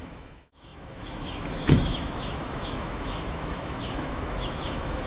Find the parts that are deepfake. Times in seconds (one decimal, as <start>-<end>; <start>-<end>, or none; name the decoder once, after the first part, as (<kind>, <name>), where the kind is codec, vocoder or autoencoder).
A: 0.0-5.1 (autoencoder, DAC-VAE)